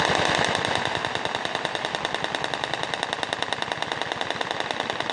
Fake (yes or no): no